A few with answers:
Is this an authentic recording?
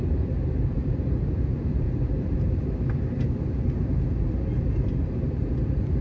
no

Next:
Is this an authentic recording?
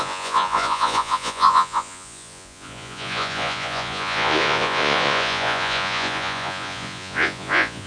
no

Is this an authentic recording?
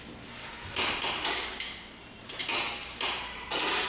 yes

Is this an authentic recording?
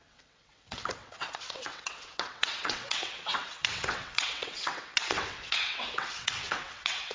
no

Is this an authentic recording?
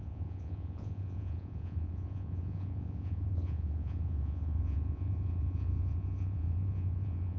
no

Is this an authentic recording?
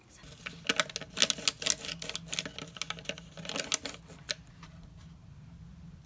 yes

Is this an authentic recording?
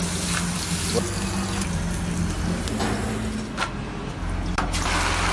yes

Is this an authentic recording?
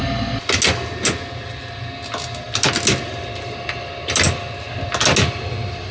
yes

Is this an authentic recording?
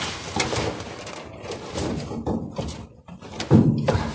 yes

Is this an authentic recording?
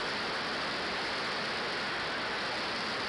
yes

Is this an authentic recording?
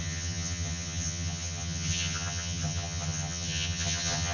no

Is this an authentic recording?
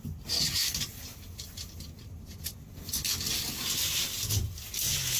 yes